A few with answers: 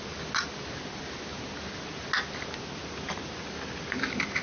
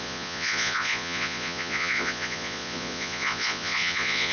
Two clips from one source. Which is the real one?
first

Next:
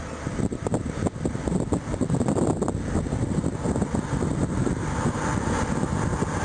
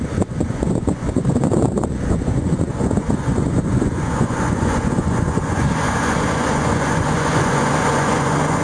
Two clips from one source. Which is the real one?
first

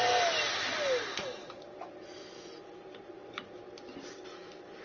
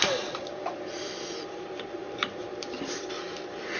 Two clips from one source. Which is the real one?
first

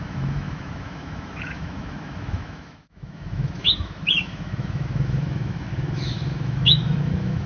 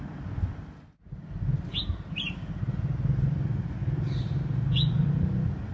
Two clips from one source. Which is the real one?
second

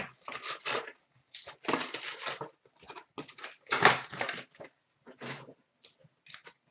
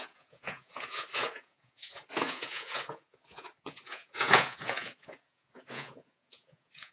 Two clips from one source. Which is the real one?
first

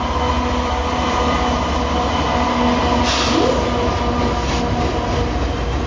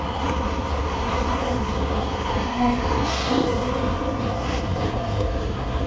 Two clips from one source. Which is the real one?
first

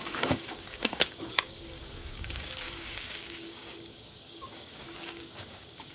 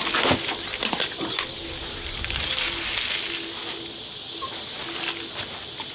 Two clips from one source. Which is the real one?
second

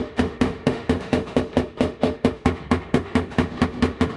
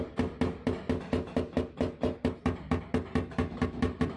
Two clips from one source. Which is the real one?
second